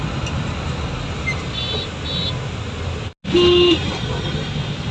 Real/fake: real